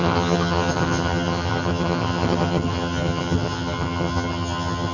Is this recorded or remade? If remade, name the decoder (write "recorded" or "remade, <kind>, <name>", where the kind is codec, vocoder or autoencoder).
remade, vocoder, HiFi-GAN